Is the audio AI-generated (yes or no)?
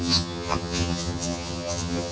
yes